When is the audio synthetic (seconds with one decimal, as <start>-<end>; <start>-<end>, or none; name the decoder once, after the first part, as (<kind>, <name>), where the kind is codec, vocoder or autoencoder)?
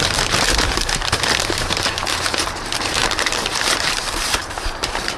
0.0-3.0 (vocoder, BigVGAN v2); 3.5-5.2